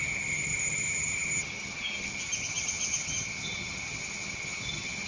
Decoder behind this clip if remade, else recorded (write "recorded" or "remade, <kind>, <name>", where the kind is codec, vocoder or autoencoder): remade, vocoder, HiFi-GAN